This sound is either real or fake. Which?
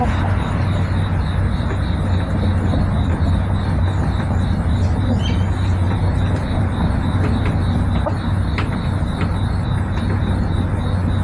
real